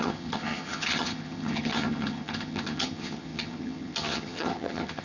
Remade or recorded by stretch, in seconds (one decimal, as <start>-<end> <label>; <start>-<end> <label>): 0.0-5.0 remade